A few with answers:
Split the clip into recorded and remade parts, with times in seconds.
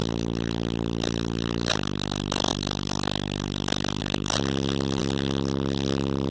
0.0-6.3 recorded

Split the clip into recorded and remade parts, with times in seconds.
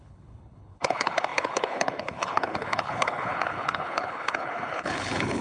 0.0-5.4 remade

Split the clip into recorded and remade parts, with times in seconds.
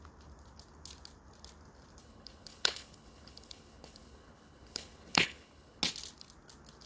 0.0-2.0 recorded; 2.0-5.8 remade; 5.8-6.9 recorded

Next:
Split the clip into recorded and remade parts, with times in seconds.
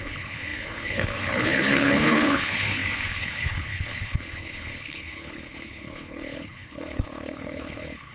0.0-8.1 remade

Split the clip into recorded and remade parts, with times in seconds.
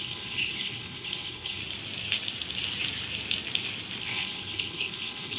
0.0-1.6 remade; 1.6-4.0 recorded; 4.0-5.4 remade